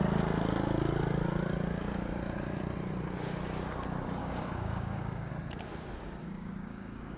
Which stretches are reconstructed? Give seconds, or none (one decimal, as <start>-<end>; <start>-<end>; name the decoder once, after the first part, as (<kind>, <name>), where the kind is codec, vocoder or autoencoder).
4.2-5.3 (codec, DAC); 6.2-7.2